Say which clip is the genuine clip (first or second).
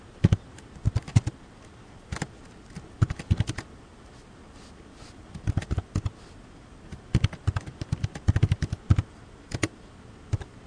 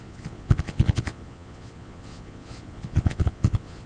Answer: first